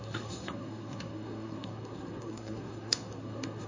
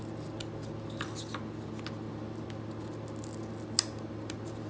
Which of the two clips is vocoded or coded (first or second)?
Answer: first